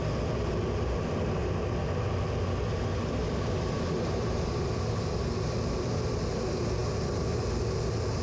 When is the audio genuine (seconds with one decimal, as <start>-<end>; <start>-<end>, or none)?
0.0-8.2